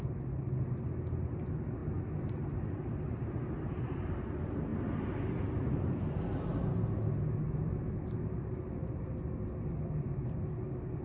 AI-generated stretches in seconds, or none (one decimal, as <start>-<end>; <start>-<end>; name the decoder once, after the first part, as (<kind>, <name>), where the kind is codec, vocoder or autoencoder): none

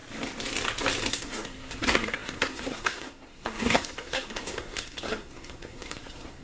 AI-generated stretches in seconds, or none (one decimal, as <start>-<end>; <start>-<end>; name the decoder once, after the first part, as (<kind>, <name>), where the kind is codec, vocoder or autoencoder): 1.1-6.4 (codec, SNAC)

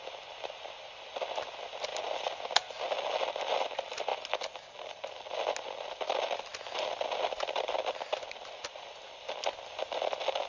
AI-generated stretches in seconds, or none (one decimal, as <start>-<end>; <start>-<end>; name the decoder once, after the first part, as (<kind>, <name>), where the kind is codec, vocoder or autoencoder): none

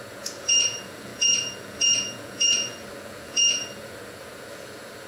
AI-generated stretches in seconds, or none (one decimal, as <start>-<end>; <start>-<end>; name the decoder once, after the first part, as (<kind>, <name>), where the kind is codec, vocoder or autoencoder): 0.0-5.1 (vocoder, Vocos)

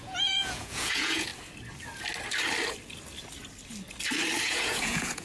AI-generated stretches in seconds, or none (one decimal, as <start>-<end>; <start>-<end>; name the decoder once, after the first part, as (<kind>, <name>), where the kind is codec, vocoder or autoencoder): 0.0-1.3 (vocoder, Vocos); 4.4-5.2